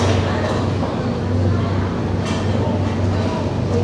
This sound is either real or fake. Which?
real